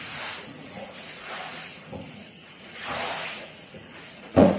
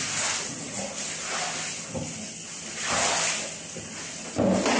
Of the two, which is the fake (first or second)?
first